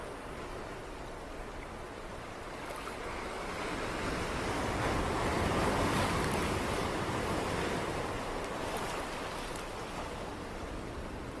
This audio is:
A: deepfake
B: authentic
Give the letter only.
B